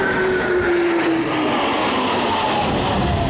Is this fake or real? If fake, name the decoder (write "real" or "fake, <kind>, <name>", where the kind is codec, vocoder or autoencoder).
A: real